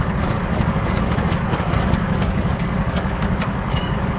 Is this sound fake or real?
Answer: fake